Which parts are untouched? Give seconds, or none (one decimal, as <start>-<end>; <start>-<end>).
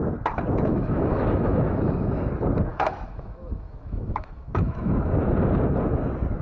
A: 0.0-0.7; 2.3-2.7; 4.9-6.4